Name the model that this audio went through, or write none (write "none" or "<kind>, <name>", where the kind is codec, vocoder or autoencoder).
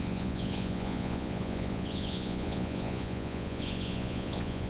vocoder, Vocos